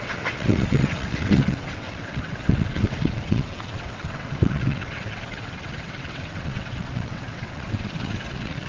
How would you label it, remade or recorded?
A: remade